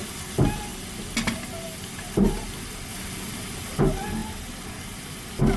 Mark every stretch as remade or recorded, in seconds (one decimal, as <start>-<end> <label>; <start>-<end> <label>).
0.0-5.6 recorded